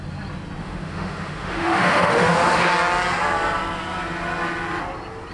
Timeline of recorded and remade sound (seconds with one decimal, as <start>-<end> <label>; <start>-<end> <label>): 0.0-0.6 recorded; 0.6-2.7 remade; 2.7-5.3 recorded